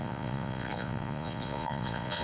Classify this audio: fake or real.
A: fake